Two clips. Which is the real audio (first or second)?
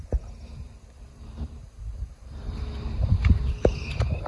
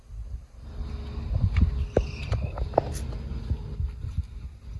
second